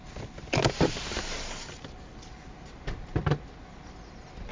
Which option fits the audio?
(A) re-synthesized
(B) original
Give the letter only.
B